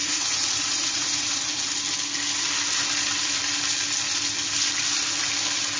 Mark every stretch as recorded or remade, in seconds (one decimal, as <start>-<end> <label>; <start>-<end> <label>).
0.0-1.7 remade; 1.7-5.8 recorded